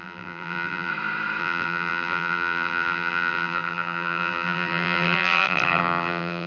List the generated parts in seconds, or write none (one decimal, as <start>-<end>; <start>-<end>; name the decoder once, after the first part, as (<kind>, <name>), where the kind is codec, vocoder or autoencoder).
0.0-0.9 (vocoder, BigVGAN v2); 1.4-6.5